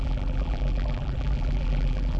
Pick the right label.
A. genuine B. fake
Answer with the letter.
B